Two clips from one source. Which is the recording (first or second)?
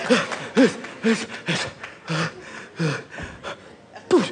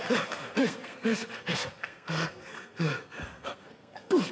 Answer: first